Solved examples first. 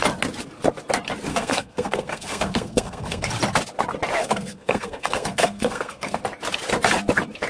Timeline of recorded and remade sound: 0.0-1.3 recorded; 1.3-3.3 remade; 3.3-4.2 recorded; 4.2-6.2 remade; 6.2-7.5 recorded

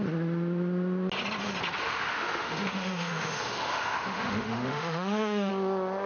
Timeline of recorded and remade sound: 0.0-1.8 recorded; 1.8-5.5 remade; 5.5-6.1 recorded

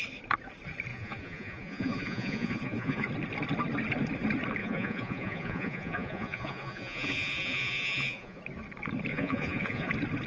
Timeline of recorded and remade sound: 0.0-0.9 recorded; 0.9-3.1 remade; 3.1-4.6 recorded; 4.6-8.4 remade; 8.4-9.1 recorded; 9.1-9.9 remade; 9.9-10.3 recorded

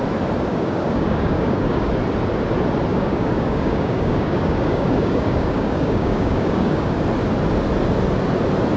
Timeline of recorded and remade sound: 0.0-0.5 recorded; 0.5-1.9 remade; 1.9-2.9 recorded; 2.9-7.0 remade; 7.0-8.8 recorded